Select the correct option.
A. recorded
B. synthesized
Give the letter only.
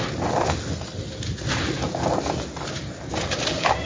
A